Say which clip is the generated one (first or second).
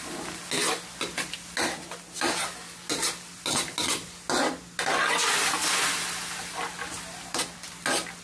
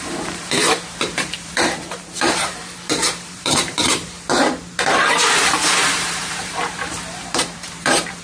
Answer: second